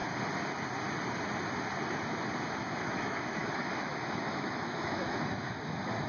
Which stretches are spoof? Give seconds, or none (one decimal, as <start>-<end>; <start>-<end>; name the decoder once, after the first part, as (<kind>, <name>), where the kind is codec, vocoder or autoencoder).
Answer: 2.4-6.1 (autoencoder, DAC-VAE)